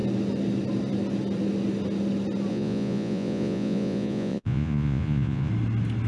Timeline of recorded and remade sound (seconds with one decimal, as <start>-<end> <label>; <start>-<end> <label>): 0.0-2.5 recorded; 2.5-5.5 remade; 5.5-6.1 recorded